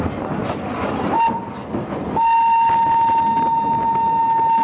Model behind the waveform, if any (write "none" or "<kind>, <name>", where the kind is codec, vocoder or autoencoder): none